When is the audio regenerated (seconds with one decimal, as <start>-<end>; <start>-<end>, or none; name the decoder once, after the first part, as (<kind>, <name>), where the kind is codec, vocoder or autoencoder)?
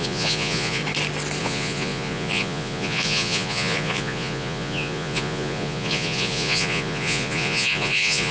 0.0-0.8 (vocoder, Vocos); 1.4-8.3